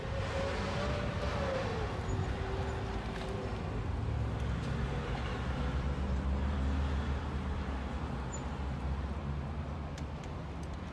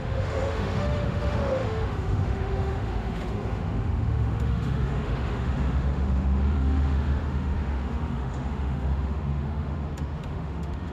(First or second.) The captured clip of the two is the first